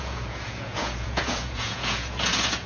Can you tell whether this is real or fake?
fake